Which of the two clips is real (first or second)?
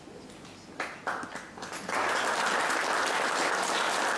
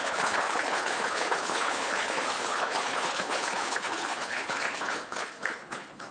first